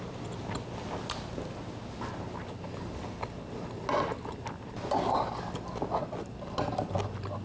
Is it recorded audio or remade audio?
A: recorded